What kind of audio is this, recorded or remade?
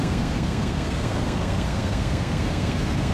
remade